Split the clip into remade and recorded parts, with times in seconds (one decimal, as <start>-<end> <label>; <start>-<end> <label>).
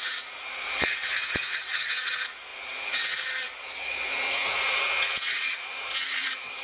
0.0-6.6 remade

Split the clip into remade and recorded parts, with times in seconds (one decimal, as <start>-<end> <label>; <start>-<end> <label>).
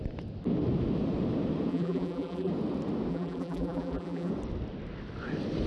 0.0-1.7 recorded; 1.7-2.5 remade; 2.5-3.1 recorded; 3.1-4.3 remade; 4.3-5.7 recorded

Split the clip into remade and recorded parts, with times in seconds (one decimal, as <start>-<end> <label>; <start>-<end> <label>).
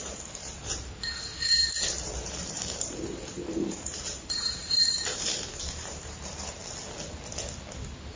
0.0-6.6 remade; 6.6-8.2 recorded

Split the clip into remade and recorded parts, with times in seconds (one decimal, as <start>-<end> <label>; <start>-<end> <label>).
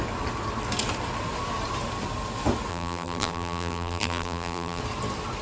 0.0-2.7 recorded; 2.7-4.8 remade; 4.8-5.4 recorded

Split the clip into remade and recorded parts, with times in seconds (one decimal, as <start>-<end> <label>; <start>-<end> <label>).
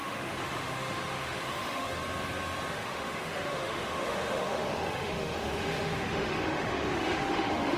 0.0-2.0 remade; 2.0-2.7 recorded; 2.7-7.8 remade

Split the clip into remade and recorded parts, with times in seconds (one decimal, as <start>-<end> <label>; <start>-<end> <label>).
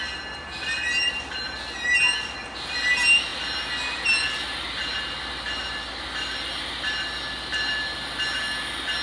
0.0-9.0 recorded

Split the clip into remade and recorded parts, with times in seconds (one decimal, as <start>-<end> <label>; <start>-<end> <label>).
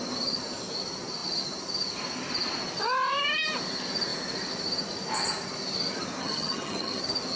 0.0-6.2 recorded; 6.2-7.0 remade; 7.0-7.4 recorded